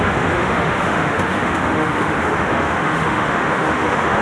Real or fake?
fake